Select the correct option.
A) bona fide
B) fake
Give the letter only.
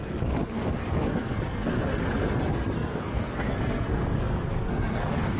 B